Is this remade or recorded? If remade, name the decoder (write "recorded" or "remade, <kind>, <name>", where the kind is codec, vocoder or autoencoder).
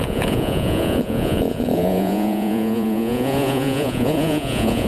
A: remade, vocoder, Vocos